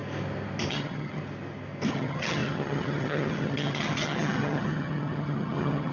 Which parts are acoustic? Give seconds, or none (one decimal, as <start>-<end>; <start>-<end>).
0.0-0.7; 1.2-1.9